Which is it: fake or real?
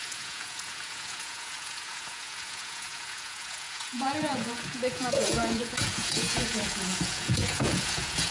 fake